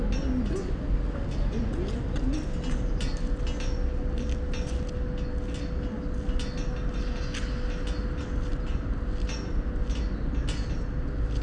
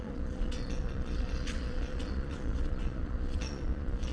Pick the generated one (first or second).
second